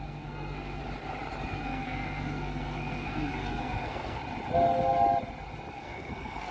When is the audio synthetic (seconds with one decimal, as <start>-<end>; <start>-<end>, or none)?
0.0-0.8; 1.5-4.2; 5.7-6.5